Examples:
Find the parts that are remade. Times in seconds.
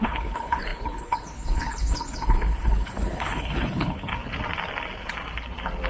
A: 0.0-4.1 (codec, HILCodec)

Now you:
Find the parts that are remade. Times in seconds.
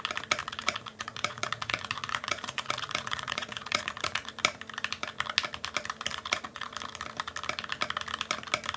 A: 0.4-4.3 (vocoder, Vocos); 6.1-6.7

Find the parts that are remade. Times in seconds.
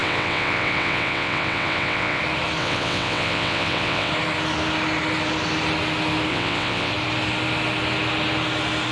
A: 0.0-2.2 (vocoder, WaveNeXt); 2.6-4.1; 6.3-6.9